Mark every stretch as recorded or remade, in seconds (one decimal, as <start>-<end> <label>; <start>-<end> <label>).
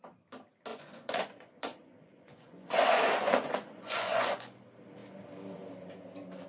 0.0-0.7 recorded; 0.7-4.6 remade; 4.6-6.5 recorded